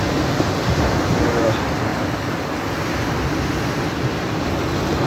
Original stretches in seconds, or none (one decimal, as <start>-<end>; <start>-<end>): 0.0-5.1